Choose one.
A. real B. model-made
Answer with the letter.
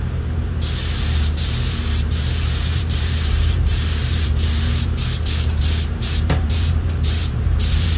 B